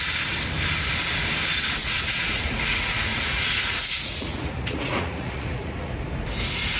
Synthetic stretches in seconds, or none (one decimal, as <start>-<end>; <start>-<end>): 1.8-5.9